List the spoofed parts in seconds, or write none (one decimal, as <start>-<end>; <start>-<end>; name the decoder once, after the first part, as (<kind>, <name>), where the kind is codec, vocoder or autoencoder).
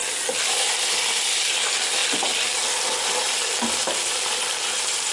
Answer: none